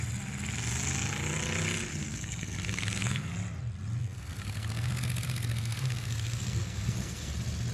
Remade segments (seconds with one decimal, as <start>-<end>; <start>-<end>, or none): 1.9-3.3; 4.0-7.3